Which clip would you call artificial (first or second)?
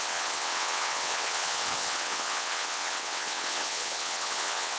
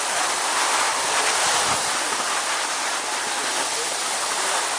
first